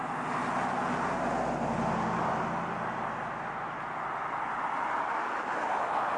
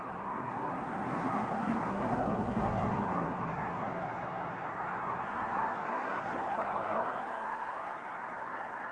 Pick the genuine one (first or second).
first